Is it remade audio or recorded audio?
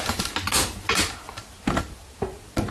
recorded